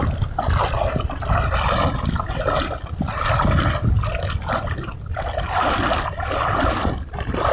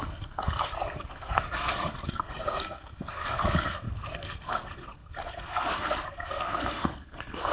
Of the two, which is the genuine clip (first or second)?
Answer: first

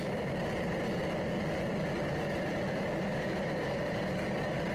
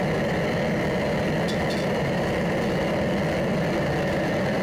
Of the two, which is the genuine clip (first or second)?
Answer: second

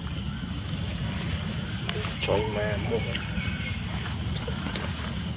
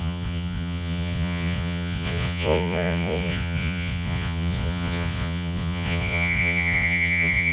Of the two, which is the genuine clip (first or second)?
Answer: first